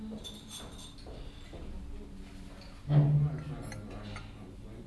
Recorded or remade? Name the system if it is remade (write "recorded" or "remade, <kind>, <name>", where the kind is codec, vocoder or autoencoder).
recorded